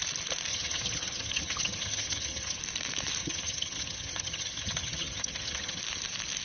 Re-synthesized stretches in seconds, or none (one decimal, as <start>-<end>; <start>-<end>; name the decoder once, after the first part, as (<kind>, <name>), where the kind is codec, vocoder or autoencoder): 0.5-2.6 (vocoder, HiFi-GAN); 3.2-5.8